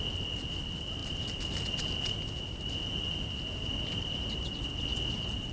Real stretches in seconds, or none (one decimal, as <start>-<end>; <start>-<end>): 0.0-5.5